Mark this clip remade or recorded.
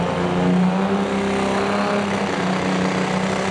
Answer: recorded